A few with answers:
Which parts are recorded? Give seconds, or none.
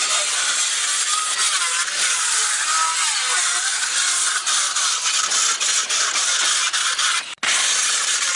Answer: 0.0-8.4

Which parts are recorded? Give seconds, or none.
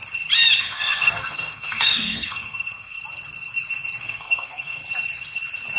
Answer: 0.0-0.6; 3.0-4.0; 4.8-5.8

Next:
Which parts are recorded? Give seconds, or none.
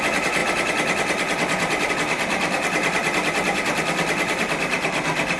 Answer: 0.0-5.4